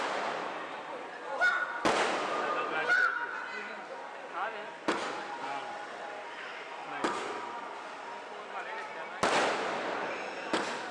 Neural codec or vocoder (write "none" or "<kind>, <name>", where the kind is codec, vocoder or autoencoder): none